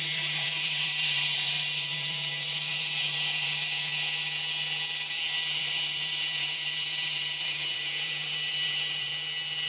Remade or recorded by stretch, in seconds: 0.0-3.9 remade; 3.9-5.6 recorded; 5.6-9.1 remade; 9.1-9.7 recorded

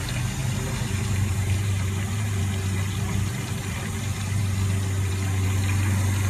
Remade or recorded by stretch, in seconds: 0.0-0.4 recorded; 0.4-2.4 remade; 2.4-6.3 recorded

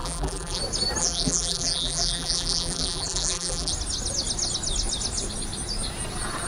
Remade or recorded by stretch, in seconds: 0.0-0.6 remade; 0.6-1.0 recorded; 1.0-3.7 remade; 3.7-6.5 recorded

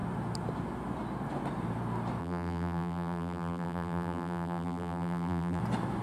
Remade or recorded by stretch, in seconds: 0.0-2.2 recorded; 2.2-5.6 remade; 5.6-6.0 recorded

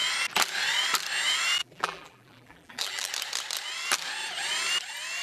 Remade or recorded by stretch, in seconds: 0.0-1.6 recorded; 1.6-3.1 remade; 3.1-5.2 recorded